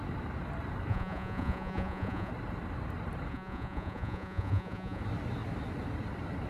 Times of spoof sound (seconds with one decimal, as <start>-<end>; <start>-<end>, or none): 0.9-2.3; 3.3-5.0